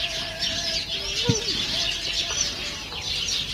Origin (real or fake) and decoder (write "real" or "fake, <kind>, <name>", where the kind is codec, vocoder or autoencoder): real